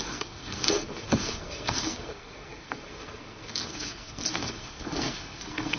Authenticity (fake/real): fake